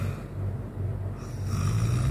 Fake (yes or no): no